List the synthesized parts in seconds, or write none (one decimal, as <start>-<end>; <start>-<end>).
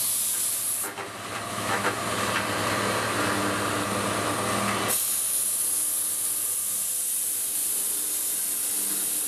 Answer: 1.5-2.0